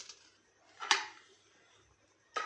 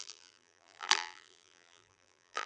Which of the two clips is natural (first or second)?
first